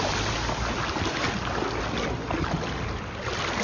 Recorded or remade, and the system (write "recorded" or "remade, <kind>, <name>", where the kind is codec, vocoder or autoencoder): recorded